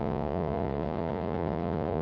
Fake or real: fake